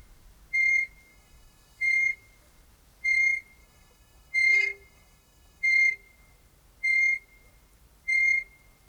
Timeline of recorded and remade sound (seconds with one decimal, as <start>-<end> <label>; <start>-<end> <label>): 0.0-1.1 recorded; 1.1-2.2 remade; 2.2-3.6 recorded; 3.6-5.9 remade; 5.9-8.9 recorded